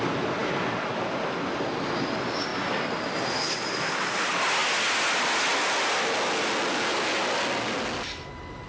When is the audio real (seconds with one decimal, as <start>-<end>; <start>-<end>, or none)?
0.0-8.7